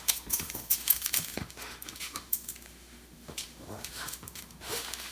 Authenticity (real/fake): fake